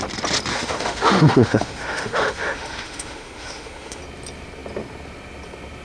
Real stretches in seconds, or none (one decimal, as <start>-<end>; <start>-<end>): 0.0-0.5; 4.0-5.8